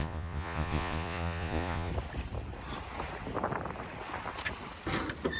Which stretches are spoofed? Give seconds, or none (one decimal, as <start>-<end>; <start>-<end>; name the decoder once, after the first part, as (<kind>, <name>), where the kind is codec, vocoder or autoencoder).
0.0-1.9 (vocoder, Vocos)